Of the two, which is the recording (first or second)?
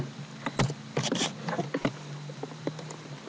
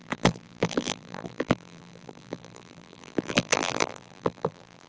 first